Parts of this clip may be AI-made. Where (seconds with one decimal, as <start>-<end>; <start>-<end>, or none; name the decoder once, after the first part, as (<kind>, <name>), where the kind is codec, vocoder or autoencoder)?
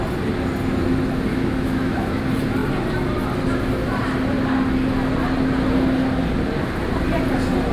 1.3-2.2 (autoencoder, DAC-VAE)